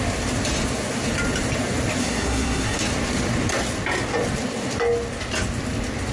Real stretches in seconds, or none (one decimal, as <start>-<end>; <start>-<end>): 0.0-2.0; 2.8-6.1